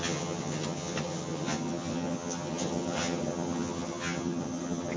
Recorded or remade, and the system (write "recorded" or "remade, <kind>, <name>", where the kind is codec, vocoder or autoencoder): remade, vocoder, HiFi-GAN